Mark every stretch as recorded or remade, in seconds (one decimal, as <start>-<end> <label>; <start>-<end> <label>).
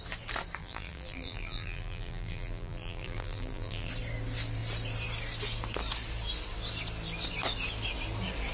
0.0-0.6 recorded; 0.6-3.9 remade; 3.9-8.5 recorded